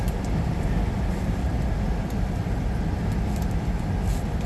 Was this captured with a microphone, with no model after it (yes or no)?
yes